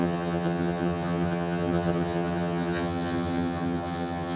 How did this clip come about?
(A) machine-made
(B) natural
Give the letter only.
A